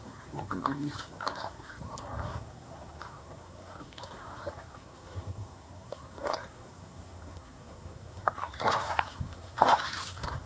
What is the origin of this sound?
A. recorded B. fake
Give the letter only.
B